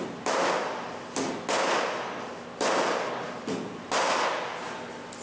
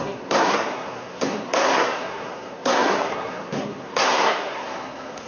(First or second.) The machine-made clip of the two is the second